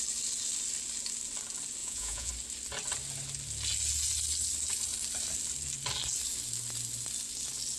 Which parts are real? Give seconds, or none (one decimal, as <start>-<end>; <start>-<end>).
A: 0.0-1.8; 2.3-7.8